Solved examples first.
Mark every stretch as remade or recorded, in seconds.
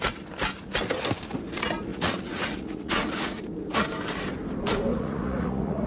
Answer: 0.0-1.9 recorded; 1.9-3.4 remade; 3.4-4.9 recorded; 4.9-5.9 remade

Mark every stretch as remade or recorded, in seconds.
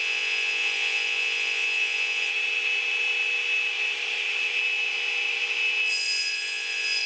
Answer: 0.0-2.3 remade; 2.3-5.9 recorded; 5.9-7.1 remade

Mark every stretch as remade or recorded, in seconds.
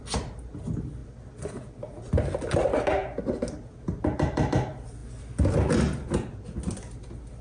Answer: 0.0-7.4 recorded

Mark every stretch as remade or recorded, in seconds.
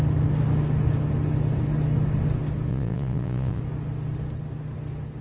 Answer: 0.0-2.7 recorded; 2.7-3.6 remade; 3.6-5.2 recorded